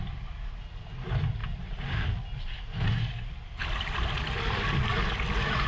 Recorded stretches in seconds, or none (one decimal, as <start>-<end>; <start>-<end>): 0.0-1.4; 2.1-3.6; 4.2-5.7